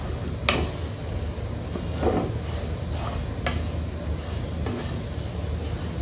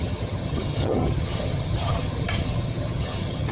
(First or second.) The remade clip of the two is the second